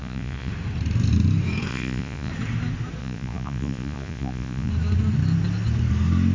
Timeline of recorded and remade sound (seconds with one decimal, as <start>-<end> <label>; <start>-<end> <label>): 0.0-0.5 remade; 0.5-1.7 recorded; 1.7-2.3 remade; 2.3-3.0 recorded; 3.0-4.7 remade; 4.7-6.3 recorded